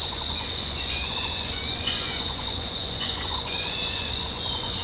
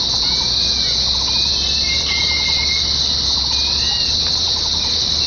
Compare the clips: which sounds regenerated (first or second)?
first